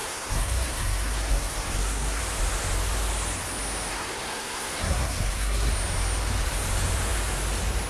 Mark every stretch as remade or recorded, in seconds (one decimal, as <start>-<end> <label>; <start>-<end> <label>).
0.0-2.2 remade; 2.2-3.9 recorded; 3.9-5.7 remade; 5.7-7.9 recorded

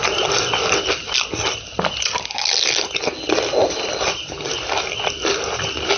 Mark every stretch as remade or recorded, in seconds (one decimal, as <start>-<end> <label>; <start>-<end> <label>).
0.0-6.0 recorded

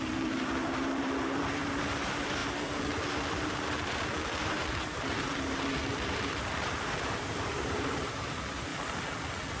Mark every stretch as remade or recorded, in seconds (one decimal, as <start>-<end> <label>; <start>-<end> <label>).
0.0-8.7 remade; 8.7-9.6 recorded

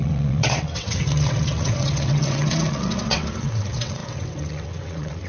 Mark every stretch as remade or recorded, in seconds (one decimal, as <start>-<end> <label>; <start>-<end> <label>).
0.0-5.3 remade

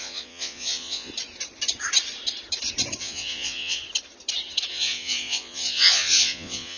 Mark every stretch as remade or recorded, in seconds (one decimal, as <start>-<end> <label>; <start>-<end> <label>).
0.0-1.1 remade; 1.1-3.0 recorded; 3.0-3.8 remade; 3.8-4.7 recorded; 4.7-6.8 remade

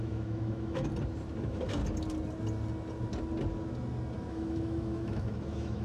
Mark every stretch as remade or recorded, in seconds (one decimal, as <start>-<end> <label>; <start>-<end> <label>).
0.0-0.9 remade; 0.9-1.4 recorded; 1.4-1.8 remade; 1.8-4.3 recorded; 4.3-5.8 remade

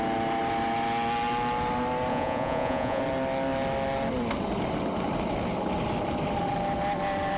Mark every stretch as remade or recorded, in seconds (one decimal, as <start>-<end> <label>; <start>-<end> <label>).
0.0-2.1 recorded; 2.1-3.0 remade; 3.0-7.4 recorded